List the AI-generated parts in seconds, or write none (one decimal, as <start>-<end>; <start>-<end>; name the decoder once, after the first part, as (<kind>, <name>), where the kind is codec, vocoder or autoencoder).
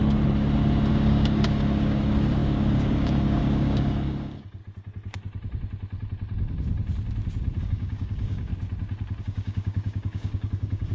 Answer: 0.9-4.6 (codec, DAC); 7.6-8.5; 9.2-10.9